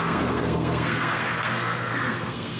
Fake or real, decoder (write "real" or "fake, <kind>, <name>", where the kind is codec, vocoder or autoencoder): fake, codec, SNAC